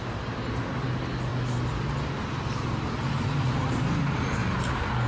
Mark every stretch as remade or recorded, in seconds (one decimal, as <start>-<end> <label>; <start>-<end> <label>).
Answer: 0.0-5.1 recorded